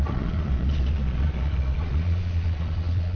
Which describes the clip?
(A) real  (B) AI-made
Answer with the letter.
B